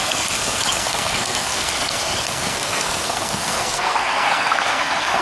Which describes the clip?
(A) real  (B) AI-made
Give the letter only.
B